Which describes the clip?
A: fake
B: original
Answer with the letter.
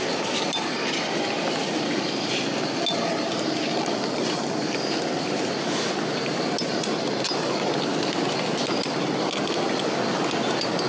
B